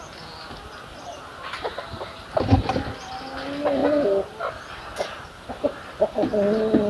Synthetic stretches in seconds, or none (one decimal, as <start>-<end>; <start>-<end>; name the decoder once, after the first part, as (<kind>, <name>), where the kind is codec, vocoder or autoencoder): none